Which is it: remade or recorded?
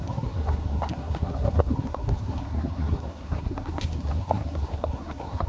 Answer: remade